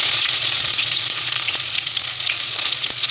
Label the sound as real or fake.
fake